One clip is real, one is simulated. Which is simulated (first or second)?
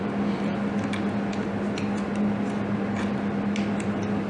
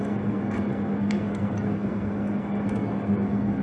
second